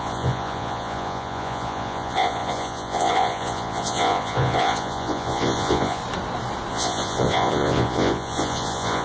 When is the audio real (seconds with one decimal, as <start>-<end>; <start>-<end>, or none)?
6.0-6.7